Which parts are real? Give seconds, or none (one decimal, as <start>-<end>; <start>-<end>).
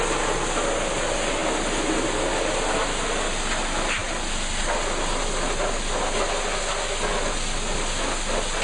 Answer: 0.0-8.6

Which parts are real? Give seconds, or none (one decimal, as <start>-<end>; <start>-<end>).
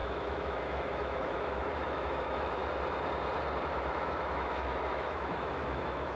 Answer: 2.6-3.9